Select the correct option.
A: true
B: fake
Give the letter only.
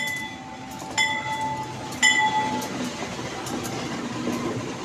A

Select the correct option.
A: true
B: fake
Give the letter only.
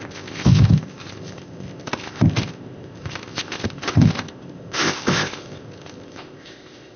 B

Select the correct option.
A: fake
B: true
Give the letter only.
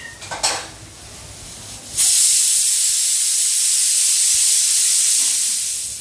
B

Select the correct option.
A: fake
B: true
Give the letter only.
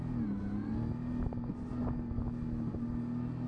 B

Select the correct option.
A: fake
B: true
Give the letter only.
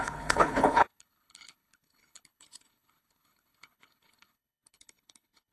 A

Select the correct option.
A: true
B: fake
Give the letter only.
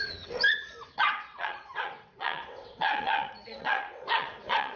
B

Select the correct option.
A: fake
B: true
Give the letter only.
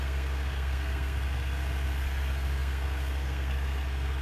A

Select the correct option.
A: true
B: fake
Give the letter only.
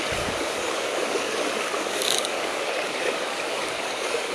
B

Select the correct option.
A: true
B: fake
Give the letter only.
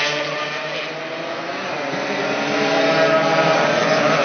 B